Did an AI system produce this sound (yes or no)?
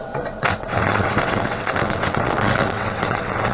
yes